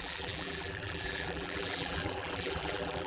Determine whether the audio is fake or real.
fake